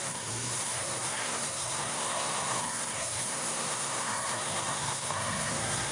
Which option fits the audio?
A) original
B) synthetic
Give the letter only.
B